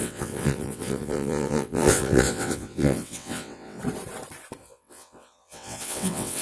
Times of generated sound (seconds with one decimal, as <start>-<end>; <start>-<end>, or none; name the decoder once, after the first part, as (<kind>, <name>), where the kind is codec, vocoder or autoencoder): 0.0-3.8 (vocoder, WaveNeXt); 4.6-6.4